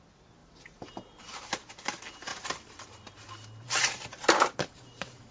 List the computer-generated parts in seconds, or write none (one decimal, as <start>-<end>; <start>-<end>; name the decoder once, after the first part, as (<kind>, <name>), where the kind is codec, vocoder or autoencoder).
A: 0.4-1.2 (vocoder, BigVGAN v2); 2.3-5.3